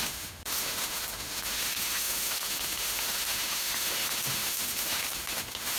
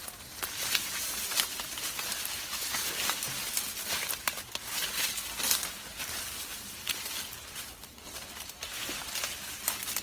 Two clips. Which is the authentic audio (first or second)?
second